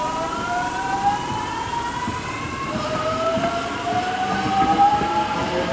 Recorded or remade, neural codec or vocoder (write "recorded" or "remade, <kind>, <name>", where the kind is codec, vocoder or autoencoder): remade, vocoder, BigVGAN v2